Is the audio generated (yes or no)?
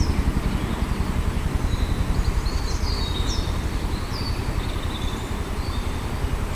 no